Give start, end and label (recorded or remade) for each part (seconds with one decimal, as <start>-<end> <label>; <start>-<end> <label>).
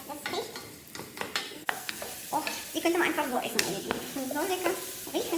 0.0-1.4 recorded; 1.4-2.0 remade; 2.0-3.3 recorded; 3.3-4.1 remade; 4.1-5.4 recorded